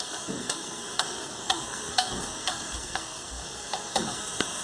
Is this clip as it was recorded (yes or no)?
no